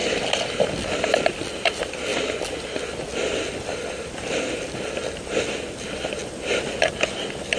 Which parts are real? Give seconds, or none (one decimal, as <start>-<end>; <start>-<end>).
0.0-1.5; 2.1-3.1